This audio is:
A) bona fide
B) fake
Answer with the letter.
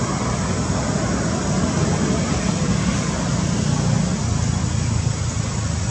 A